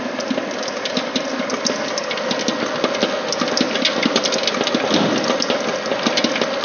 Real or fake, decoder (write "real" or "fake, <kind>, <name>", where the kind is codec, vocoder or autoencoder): real